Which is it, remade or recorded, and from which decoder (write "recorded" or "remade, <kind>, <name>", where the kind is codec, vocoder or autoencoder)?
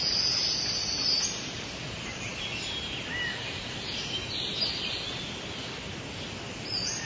recorded